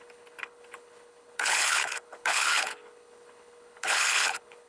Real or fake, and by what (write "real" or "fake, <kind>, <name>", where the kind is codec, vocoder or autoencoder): fake, codec, HILCodec